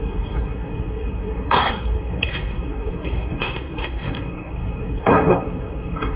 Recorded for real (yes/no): no